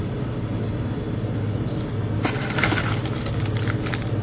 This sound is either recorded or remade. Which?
recorded